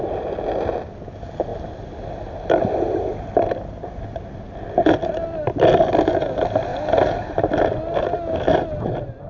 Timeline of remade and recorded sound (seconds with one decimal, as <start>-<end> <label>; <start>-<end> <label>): 0.0-9.3 recorded